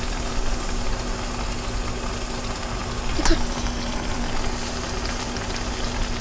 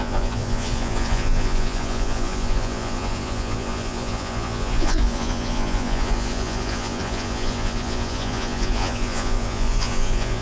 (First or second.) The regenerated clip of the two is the second